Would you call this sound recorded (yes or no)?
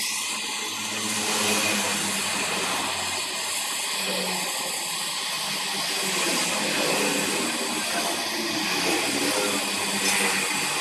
yes